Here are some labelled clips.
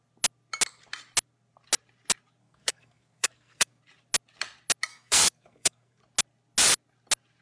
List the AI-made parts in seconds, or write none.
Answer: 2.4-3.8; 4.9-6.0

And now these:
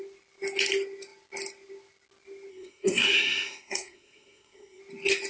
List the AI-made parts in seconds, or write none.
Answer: 2.5-4.8

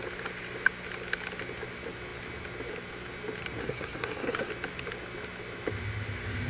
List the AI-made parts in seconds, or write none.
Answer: 3.6-4.5

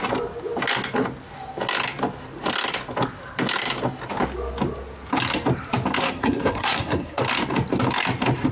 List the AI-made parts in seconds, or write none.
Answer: 6.0-7.2

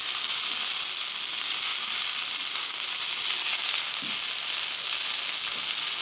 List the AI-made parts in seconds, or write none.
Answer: none